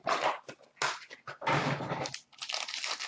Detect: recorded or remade recorded